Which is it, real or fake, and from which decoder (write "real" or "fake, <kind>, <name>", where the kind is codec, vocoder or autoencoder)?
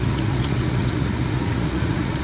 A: fake, vocoder, Vocos